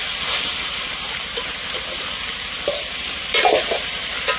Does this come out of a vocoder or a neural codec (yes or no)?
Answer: yes